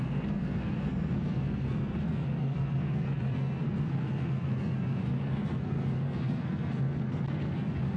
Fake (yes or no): yes